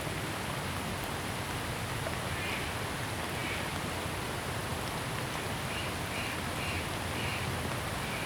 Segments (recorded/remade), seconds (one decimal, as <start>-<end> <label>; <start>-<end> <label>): 0.0-8.3 recorded